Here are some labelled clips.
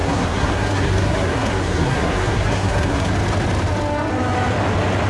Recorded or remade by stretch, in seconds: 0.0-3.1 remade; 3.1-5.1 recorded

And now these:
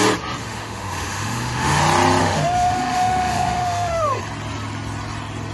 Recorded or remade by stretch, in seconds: 0.0-0.4 recorded; 0.4-1.8 remade; 1.8-2.2 recorded; 2.2-4.2 remade; 4.2-5.5 recorded

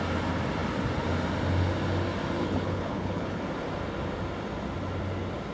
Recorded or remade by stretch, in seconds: 0.0-2.4 recorded; 2.4-3.4 remade; 3.4-5.5 recorded

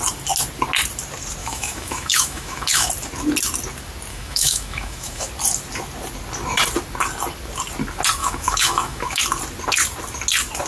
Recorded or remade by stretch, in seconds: 0.0-1.4 recorded; 1.4-2.9 remade; 2.9-4.1 recorded; 4.1-5.3 remade; 5.3-8.2 recorded; 8.2-9.2 remade; 9.2-10.7 recorded

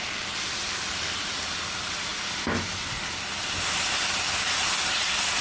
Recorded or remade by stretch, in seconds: 0.0-5.4 recorded